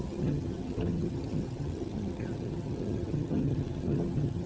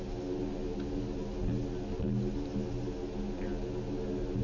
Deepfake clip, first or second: first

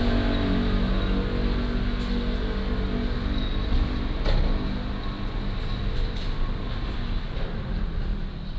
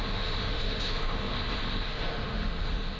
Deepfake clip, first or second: second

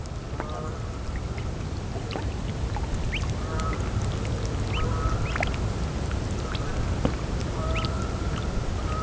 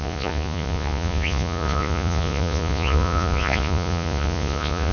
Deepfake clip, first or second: second